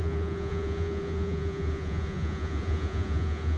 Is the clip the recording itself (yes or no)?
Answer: no